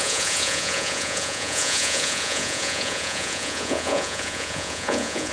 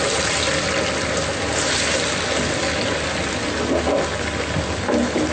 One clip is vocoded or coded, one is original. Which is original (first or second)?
second